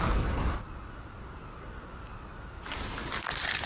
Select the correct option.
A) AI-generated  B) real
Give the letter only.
B